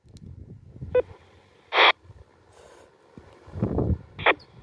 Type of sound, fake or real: real